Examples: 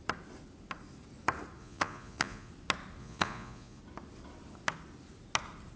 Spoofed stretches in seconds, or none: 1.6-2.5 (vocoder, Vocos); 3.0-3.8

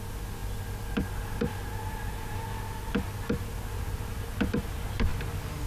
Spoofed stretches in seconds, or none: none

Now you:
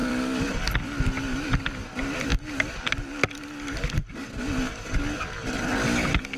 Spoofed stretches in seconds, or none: 0.0-0.5 (vocoder, BigVGAN v2)

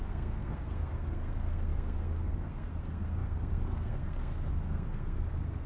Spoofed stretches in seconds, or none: 0.0-5.7 (codec, SNAC)